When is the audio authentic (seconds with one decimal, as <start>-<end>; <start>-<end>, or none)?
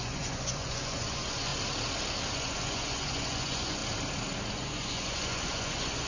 1.5-2.3; 3.8-4.5